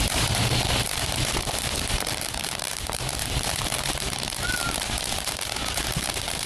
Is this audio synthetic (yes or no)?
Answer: yes